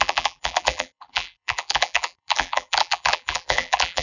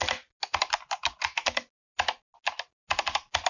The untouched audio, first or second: second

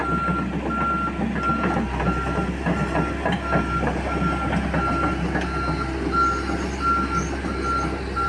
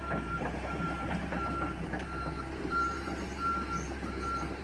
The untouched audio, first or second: first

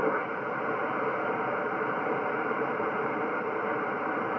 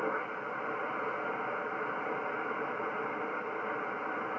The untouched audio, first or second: second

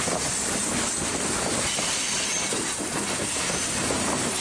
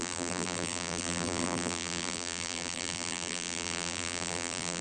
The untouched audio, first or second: first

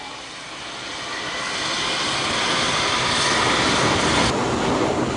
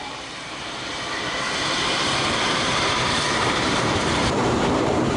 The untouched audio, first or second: first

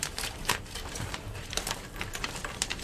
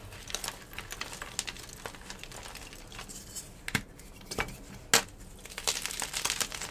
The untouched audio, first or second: second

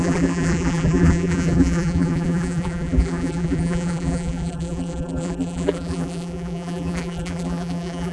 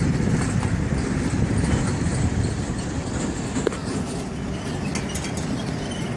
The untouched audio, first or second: second